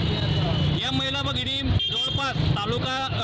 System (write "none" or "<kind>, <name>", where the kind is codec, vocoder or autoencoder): none